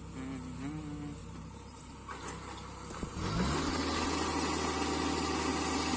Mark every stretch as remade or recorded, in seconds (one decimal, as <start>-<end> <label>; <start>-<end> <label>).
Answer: 0.0-1.2 recorded; 1.2-1.8 remade; 1.8-6.0 recorded